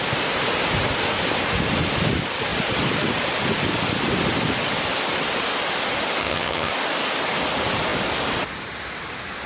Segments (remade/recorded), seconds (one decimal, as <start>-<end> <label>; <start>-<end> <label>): 0.0-6.2 recorded; 6.2-6.7 remade; 6.7-9.5 recorded